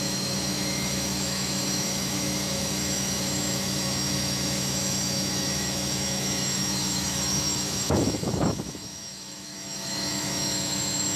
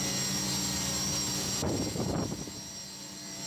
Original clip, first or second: second